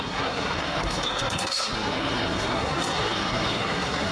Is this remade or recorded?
remade